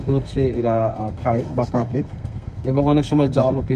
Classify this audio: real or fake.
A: fake